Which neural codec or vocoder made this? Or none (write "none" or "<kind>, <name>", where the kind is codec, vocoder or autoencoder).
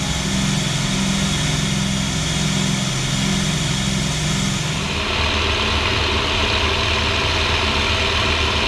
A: none